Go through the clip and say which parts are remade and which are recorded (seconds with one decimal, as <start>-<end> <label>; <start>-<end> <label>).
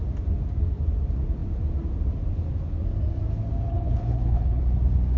0.0-3.7 recorded; 3.7-4.6 remade; 4.6-5.2 recorded